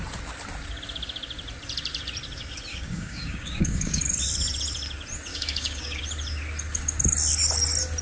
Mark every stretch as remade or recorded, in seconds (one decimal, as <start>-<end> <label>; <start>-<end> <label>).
0.0-2.7 recorded; 2.7-4.0 remade; 4.0-5.3 recorded; 5.3-6.0 remade; 6.0-8.0 recorded